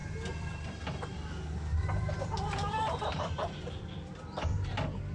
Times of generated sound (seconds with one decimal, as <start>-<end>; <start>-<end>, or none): 0.0-5.1